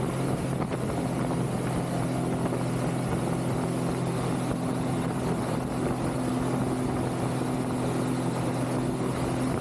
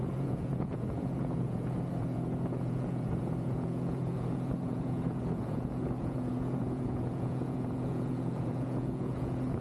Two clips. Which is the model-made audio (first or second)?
second